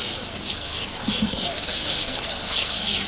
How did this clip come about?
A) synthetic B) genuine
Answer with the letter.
A